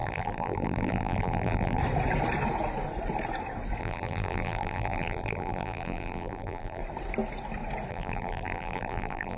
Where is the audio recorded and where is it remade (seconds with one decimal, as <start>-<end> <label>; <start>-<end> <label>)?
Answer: 0.0-1.8 remade; 1.8-3.8 recorded; 3.8-6.8 remade; 6.8-7.9 recorded; 7.9-9.4 remade